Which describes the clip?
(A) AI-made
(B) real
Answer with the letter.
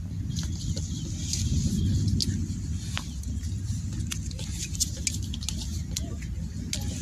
B